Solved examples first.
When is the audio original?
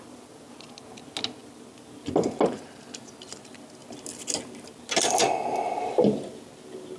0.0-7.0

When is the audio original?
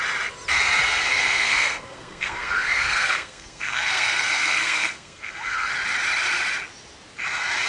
0.0-1.1; 5.7-7.7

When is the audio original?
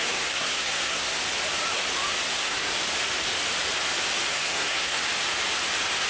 1.2-2.3; 2.7-4.3; 5.0-6.1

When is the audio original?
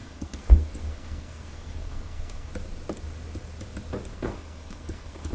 2.5-4.1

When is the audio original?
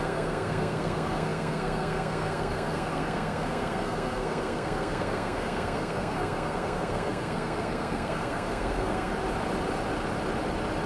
9.1-10.9